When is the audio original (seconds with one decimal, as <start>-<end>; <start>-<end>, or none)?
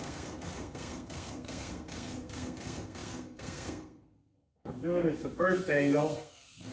none